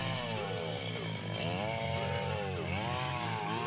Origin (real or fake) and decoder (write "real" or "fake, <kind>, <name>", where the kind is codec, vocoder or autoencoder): real